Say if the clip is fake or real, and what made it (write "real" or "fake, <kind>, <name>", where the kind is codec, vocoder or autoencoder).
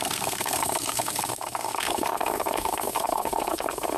fake, codec, SNAC